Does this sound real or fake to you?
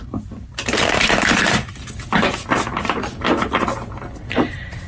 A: real